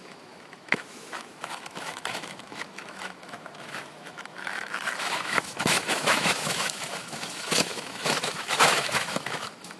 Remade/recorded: remade